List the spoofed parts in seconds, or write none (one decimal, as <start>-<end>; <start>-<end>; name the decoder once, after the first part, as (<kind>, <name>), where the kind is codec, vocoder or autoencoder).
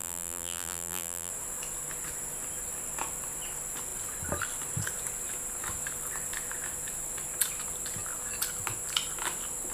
0.0-1.3 (vocoder, BigVGAN v2)